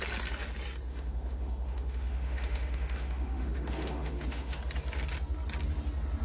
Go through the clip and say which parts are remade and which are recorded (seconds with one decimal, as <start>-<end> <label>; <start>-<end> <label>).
0.0-0.9 recorded; 0.9-4.6 remade; 4.6-6.2 recorded